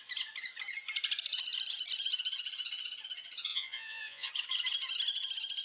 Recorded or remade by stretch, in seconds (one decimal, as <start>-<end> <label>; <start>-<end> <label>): 0.0-3.5 recorded; 3.5-4.3 remade; 4.3-5.6 recorded